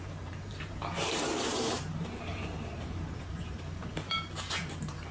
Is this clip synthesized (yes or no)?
yes